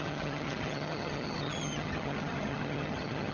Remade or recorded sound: remade